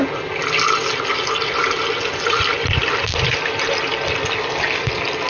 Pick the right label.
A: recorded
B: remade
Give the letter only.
A